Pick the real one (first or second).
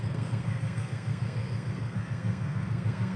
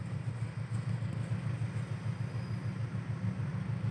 second